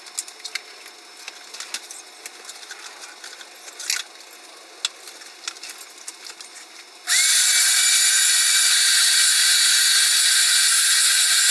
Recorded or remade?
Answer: recorded